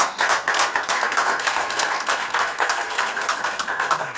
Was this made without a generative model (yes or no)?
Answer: no